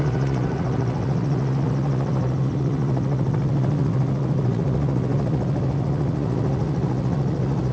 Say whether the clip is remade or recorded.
remade